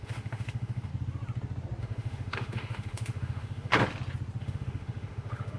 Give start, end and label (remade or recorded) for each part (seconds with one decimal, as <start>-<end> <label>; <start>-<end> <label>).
0.0-0.9 remade; 0.9-1.8 recorded; 1.8-3.7 remade; 3.7-4.4 recorded; 4.4-5.6 remade